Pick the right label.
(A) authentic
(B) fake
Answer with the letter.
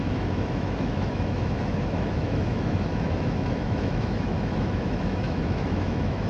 B